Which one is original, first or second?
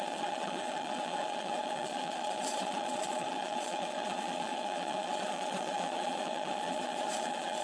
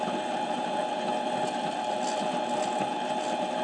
second